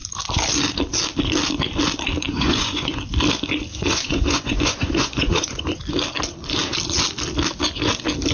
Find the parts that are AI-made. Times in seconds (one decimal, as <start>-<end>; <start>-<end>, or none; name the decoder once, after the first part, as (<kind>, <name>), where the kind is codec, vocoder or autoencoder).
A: 2.3-3.0 (vocoder, Vocos); 3.7-5.8